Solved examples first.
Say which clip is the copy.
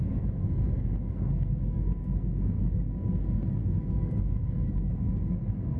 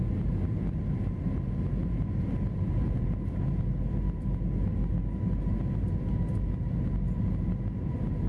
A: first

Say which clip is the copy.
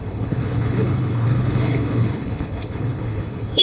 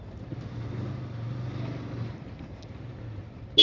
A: first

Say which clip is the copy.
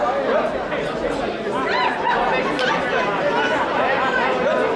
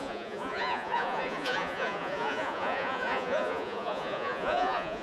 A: second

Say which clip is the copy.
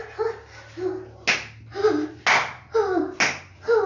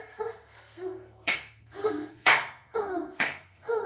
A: second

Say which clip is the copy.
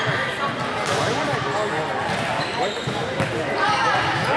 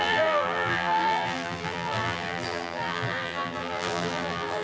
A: second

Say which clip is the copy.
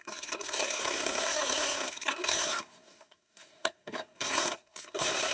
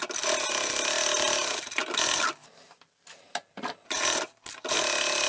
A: first